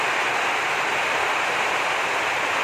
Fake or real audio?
real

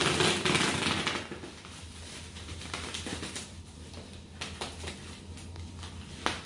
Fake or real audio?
real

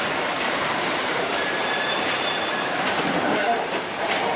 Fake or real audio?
fake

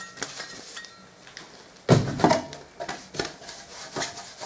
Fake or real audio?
real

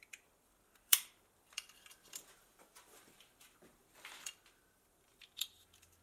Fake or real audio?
fake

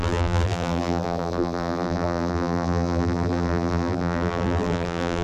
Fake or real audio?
fake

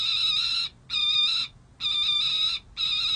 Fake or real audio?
real